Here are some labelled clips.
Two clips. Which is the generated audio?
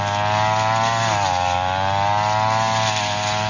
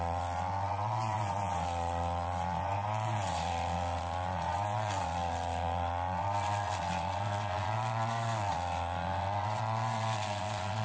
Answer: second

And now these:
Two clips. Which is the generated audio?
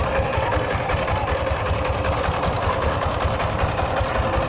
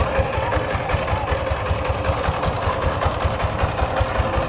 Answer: first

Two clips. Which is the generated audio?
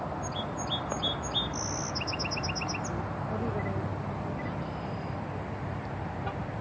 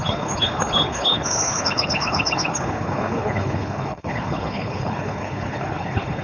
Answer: second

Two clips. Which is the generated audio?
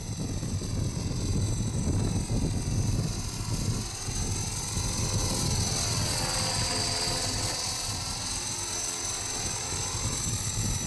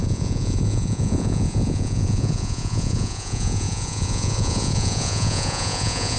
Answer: second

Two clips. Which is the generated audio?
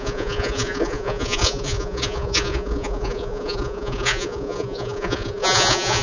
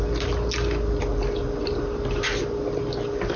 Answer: first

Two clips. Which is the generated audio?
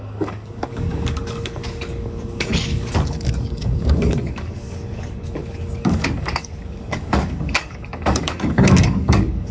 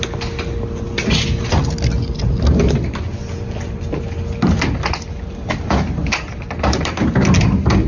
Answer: first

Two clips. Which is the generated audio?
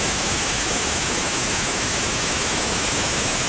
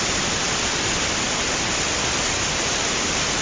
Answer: first